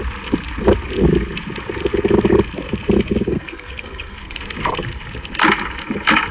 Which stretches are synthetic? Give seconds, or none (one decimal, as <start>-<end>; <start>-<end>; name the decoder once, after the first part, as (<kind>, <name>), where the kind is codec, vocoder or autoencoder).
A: 3.3-4.4 (codec, SNAC)